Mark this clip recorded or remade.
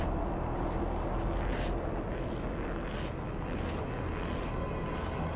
recorded